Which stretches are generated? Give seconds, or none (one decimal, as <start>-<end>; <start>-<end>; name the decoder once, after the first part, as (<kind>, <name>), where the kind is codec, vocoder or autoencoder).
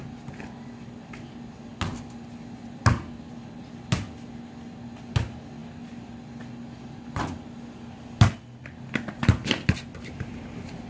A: none